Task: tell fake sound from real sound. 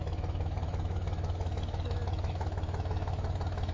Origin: fake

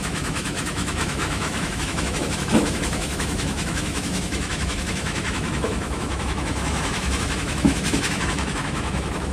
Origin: fake